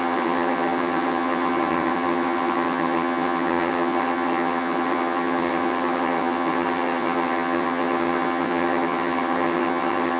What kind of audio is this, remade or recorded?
remade